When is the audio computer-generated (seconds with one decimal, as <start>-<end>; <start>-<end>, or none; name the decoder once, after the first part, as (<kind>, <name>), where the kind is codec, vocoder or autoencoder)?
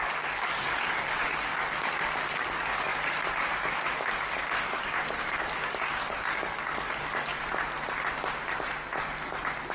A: 0.0-7.3 (codec, DAC)